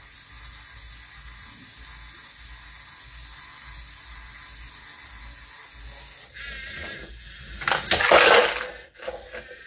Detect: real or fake real